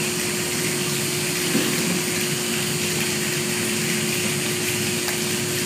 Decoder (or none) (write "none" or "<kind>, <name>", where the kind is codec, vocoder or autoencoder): none